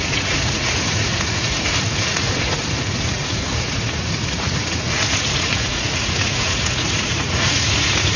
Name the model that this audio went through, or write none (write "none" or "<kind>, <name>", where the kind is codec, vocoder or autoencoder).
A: vocoder, Vocos